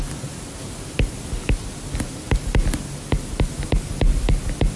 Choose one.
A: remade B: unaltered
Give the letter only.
B